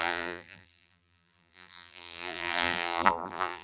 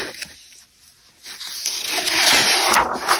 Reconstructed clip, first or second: first